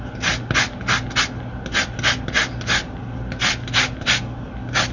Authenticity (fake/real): real